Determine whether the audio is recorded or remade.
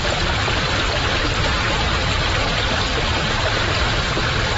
recorded